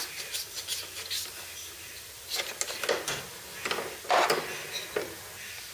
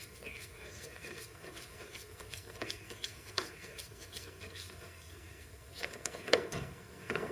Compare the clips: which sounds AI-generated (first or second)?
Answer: second